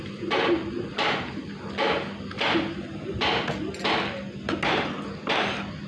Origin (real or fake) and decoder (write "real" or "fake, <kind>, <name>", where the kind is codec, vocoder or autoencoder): real